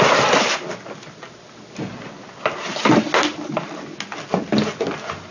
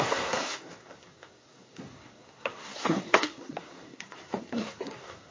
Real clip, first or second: first